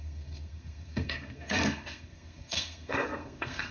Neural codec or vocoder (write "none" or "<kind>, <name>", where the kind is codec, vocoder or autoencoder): codec, SNAC